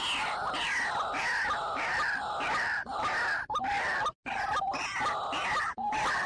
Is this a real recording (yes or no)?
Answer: yes